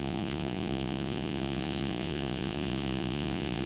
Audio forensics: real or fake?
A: fake